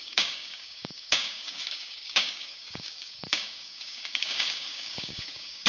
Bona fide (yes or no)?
no